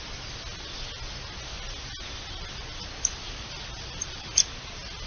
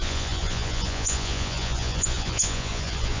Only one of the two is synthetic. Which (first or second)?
second